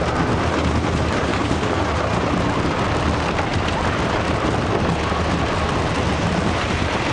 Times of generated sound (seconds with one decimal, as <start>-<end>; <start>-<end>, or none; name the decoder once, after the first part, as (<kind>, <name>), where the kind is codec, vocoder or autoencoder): 1.3-1.8 (codec, DAC)

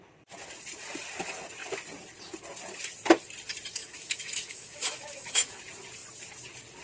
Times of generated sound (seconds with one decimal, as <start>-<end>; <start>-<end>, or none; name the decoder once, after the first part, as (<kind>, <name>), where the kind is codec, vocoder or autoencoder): 3.8-5.6 (autoencoder, DAC-VAE)

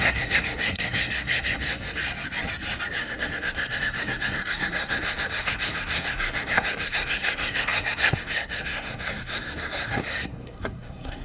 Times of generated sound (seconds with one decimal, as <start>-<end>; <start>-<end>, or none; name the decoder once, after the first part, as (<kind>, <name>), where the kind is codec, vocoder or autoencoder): 0.0-2.0 (codec, SNAC); 3.0-11.2

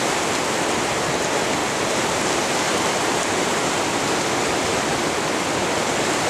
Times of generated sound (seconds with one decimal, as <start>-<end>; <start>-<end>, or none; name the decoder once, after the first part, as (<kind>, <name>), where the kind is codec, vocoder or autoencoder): 1.6-3.2 (vocoder, BigVGAN v2)

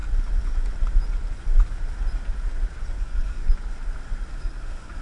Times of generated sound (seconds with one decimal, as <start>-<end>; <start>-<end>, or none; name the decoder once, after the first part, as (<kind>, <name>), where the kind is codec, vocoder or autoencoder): 3.0-3.4 (codec, DAC); 4.3-5.0

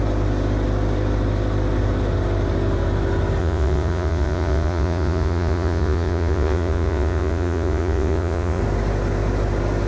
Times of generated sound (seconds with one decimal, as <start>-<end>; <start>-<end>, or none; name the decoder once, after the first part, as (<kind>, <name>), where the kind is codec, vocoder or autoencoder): 3.4-8.6 (vocoder, Vocos)

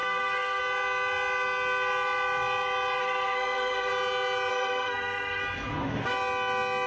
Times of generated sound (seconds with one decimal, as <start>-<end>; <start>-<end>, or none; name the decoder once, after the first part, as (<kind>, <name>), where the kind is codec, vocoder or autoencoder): 0.0-0.6 (codec, SNAC); 3.0-3.9; 4.5-5.4

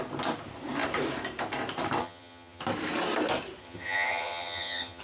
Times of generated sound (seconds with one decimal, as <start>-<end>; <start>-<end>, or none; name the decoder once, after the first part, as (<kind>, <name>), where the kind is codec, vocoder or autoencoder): 2.0-2.6 (vocoder, HiFi-GAN); 3.6-5.0